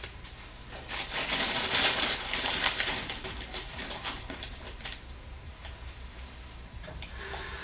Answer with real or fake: fake